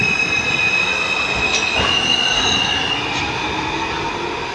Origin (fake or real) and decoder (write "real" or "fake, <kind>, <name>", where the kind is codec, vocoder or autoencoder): real